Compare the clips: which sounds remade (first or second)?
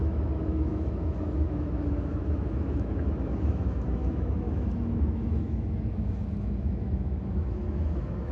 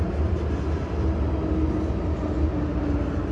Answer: first